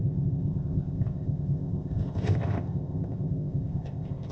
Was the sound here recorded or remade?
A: remade